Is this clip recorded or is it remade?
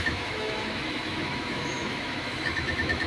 remade